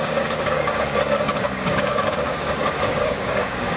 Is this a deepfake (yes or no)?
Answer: yes